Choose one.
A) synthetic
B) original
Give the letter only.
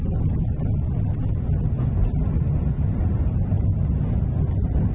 B